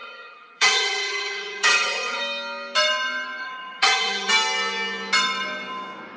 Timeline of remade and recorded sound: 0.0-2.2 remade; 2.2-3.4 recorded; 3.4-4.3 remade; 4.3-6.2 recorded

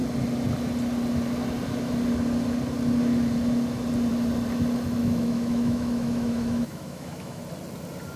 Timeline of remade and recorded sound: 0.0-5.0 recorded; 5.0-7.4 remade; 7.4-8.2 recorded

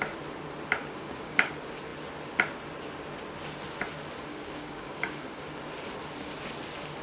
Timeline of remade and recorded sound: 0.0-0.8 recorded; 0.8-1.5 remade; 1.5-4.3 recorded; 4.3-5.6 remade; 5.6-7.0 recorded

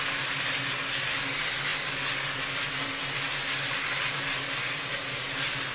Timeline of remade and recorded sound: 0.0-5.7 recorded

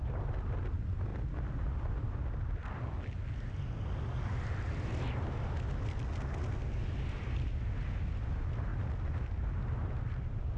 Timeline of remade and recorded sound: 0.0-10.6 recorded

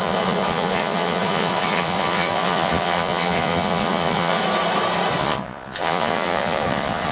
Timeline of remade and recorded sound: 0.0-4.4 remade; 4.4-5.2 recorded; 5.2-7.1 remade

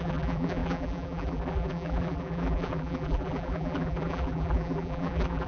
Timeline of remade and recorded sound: 0.0-5.5 remade

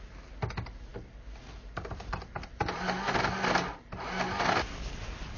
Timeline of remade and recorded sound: 0.0-5.4 recorded